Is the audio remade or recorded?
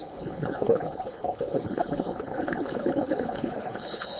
remade